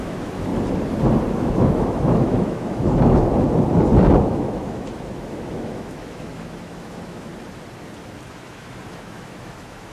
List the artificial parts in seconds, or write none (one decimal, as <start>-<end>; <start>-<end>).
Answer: 0.0-0.5; 1.3-3.3; 4.2-7.3; 8.3-9.9